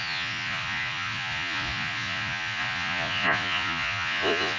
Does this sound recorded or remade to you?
remade